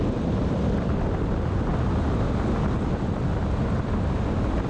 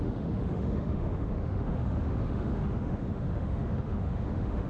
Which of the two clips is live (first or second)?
first